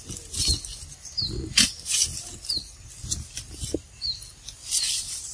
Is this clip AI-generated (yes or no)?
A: no